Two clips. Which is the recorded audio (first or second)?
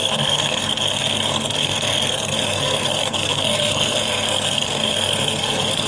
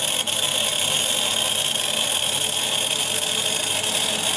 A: second